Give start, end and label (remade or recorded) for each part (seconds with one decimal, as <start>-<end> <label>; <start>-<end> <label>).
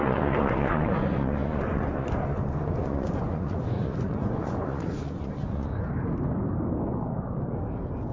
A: 0.0-5.7 remade; 5.7-8.1 recorded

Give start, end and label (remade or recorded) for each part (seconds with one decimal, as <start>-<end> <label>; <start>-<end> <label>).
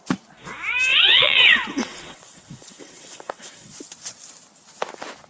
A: 0.0-0.9 recorded; 0.9-3.7 remade; 3.7-5.3 recorded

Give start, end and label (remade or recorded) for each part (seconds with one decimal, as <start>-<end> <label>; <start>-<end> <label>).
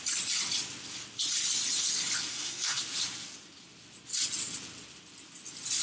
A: 0.0-2.3 recorded; 2.3-2.8 remade; 2.8-5.8 recorded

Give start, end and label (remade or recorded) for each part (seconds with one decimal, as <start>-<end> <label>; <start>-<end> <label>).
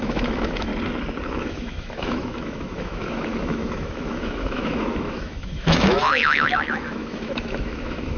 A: 0.0-0.7 remade; 0.7-1.3 recorded; 1.3-8.2 remade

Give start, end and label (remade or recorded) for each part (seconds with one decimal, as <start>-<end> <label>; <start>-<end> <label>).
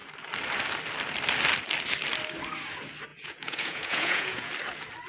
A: 0.0-3.1 recorded; 3.1-4.5 remade; 4.5-5.1 recorded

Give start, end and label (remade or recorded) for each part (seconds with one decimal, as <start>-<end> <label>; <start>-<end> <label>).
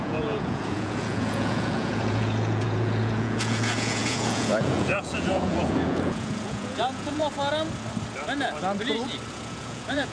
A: 0.0-7.2 remade; 7.2-9.3 recorded; 9.3-10.1 remade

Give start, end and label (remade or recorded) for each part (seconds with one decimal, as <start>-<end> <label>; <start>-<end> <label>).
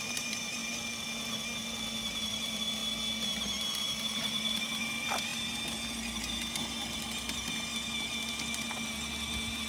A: 0.0-0.6 remade; 0.6-2.2 recorded; 2.2-2.8 remade; 2.8-3.8 recorded; 3.8-5.3 remade; 5.3-9.7 recorded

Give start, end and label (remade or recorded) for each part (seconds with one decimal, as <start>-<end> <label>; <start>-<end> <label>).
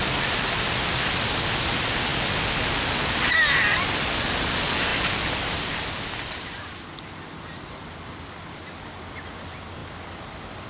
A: 0.0-10.7 recorded